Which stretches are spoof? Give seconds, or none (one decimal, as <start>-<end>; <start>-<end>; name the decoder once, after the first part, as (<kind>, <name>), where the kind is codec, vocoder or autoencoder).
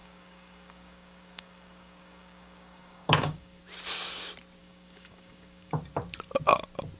0.0-3.6 (codec, DAC); 4.6-5.8